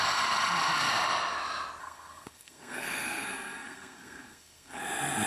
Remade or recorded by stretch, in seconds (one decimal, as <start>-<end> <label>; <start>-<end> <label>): 0.0-1.8 recorded; 1.8-4.8 remade; 4.8-5.3 recorded